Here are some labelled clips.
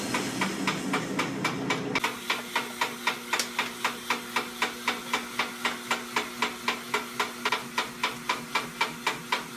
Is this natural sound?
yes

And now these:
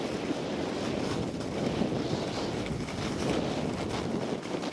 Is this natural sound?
yes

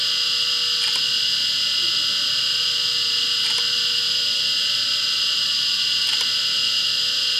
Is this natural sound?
yes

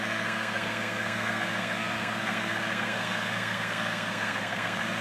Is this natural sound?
no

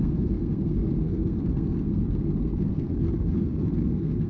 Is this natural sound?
no